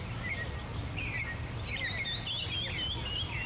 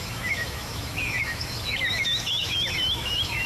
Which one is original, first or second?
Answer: first